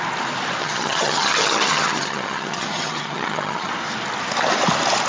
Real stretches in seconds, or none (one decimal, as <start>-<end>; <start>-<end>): 0.0-0.6; 3.7-5.1